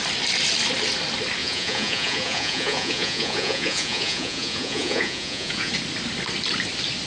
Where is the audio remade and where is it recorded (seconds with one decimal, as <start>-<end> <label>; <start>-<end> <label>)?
0.0-1.4 recorded; 1.4-5.7 remade; 5.7-7.1 recorded